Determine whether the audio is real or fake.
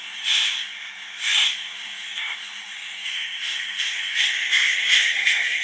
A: fake